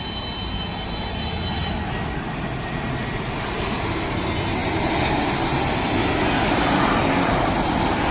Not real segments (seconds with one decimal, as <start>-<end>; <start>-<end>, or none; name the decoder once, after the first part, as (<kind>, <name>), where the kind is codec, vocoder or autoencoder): none